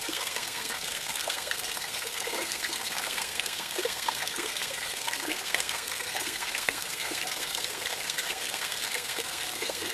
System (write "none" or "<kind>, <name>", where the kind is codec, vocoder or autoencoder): codec, SNAC